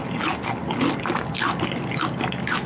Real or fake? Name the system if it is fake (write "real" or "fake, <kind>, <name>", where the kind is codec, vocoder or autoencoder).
real